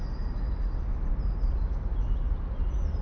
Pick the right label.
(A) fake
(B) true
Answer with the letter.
B